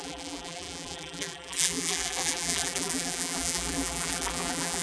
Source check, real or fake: fake